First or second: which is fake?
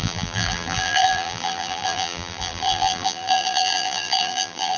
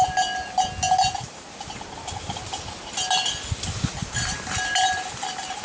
first